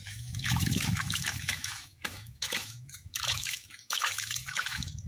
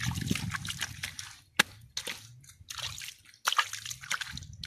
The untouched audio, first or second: second